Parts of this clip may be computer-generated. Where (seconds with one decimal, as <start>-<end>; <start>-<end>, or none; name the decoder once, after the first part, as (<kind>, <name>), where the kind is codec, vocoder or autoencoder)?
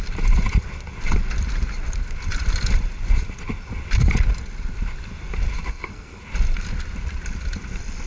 5.6-6.2 (codec, SNAC)